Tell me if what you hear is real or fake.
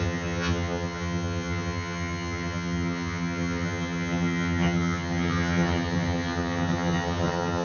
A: fake